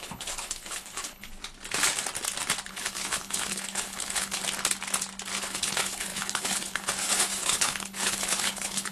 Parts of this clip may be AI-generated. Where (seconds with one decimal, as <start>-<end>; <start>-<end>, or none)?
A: 0.0-1.3; 2.7-4.4; 5.4-8.9